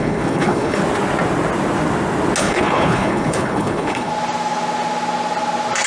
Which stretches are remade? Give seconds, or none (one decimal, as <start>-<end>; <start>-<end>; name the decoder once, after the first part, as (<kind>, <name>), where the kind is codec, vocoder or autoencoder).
0.0-0.8 (codec, HILCodec); 2.4-4.1